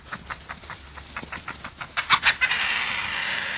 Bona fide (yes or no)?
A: yes